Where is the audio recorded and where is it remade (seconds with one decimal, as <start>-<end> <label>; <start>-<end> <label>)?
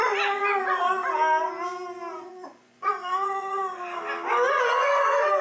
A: 0.0-1.0 remade; 1.0-2.1 recorded; 2.1-3.8 remade; 3.8-4.6 recorded; 4.6-5.4 remade